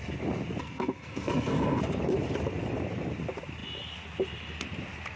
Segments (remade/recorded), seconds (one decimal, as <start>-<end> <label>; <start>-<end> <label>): 0.0-0.6 recorded; 0.6-1.8 remade; 1.8-5.2 recorded